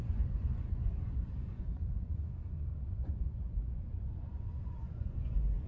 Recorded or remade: remade